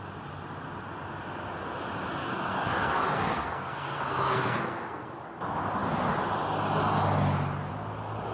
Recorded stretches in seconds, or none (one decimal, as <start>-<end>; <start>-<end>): 0.0-2.2; 5.1-8.3

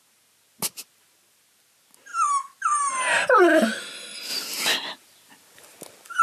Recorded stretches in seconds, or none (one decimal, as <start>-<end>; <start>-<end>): 0.0-6.2